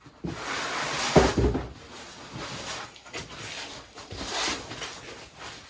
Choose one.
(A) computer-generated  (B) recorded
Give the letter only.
B